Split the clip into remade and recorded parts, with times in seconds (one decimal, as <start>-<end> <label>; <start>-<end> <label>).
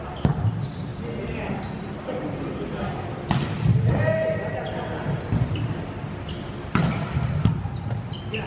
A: 0.0-8.5 recorded